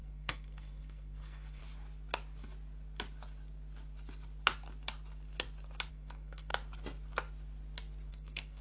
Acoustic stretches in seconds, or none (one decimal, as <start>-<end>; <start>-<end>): 1.6-5.9; 6.5-8.1